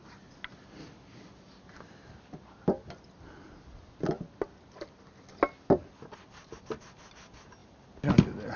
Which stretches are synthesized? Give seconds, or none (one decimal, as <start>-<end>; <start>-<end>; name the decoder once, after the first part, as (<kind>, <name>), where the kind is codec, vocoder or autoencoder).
none

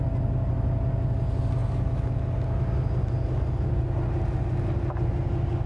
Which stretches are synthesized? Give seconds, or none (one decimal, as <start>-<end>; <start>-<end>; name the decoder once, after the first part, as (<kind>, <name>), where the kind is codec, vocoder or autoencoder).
none

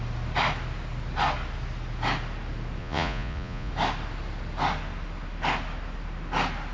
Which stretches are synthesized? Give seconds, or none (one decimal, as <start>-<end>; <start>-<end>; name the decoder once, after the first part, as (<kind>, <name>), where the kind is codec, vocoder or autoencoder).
2.8-3.7 (vocoder, Vocos)

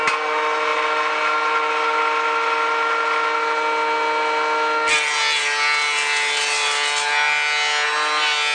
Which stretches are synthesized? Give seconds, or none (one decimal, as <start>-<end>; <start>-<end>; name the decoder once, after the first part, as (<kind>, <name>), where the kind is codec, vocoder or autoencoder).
none

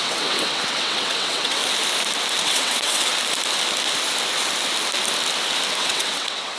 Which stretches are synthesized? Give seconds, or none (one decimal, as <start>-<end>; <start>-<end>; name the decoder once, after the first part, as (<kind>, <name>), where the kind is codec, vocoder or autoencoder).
0.0-1.6 (vocoder, WaveNeXt); 2.4-3.1; 5.8-6.6